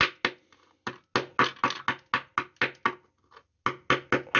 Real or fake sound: real